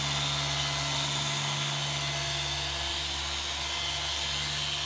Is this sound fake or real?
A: real